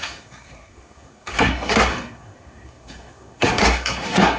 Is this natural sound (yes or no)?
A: no